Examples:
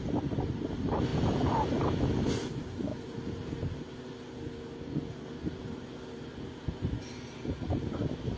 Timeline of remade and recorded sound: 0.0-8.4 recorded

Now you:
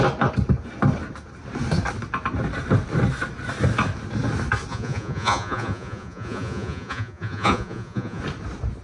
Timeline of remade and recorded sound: 0.0-4.7 recorded; 4.7-8.2 remade; 8.2-8.8 recorded

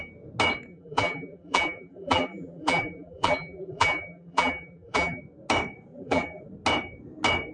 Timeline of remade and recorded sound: 0.0-0.7 recorded; 0.7-5.2 remade; 5.2-5.9 recorded; 5.9-6.4 remade; 6.4-7.5 recorded

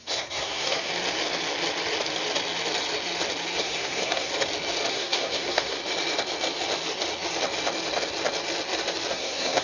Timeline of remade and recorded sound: 0.0-0.9 remade; 0.9-3.6 recorded; 3.6-4.3 remade; 4.3-4.9 recorded; 4.9-5.8 remade; 5.8-9.1 recorded; 9.1-9.6 remade